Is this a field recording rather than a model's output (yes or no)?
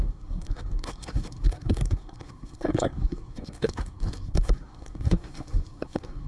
no